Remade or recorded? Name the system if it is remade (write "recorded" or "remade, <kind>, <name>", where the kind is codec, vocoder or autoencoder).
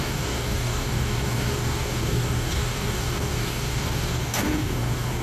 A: remade, codec, DAC